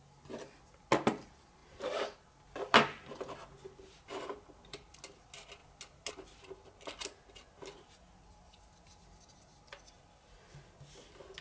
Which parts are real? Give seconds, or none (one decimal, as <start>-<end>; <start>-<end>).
0.0-11.4